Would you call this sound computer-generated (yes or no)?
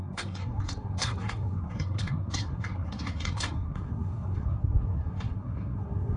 yes